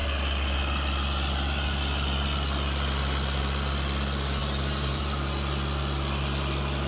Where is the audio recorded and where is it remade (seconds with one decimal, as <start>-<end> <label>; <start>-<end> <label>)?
0.0-4.4 recorded; 4.4-5.0 remade; 5.0-6.9 recorded

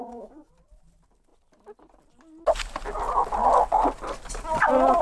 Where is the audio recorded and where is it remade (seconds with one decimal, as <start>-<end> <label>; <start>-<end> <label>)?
0.0-0.5 remade; 0.5-5.0 recorded

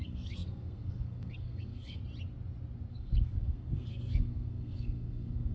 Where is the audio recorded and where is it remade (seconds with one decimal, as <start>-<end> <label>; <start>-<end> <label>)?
0.0-2.0 remade; 2.0-2.9 recorded; 2.9-5.5 remade

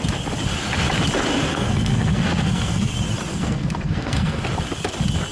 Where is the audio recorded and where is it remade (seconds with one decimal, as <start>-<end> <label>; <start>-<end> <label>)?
0.0-1.5 recorded; 1.5-2.9 remade; 2.9-3.3 recorded; 3.3-4.4 remade; 4.4-5.3 recorded